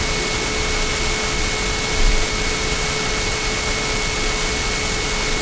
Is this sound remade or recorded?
recorded